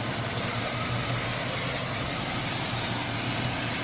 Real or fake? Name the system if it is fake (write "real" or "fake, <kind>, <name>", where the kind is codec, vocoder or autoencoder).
real